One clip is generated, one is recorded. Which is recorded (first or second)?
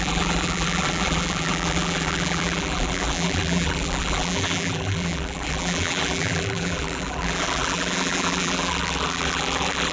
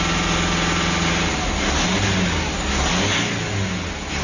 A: second